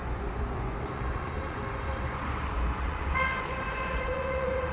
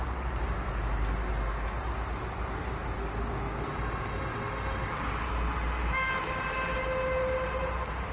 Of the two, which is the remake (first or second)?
first